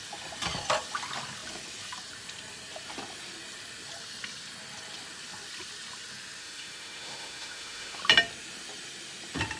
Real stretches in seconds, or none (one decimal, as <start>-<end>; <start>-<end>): 0.0-6.4; 8.0-9.6